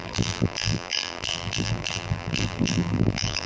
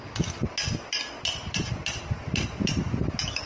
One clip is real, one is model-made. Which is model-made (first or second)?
first